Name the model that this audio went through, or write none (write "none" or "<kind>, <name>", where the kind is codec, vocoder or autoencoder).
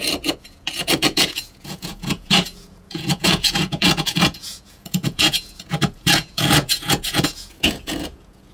vocoder, Vocos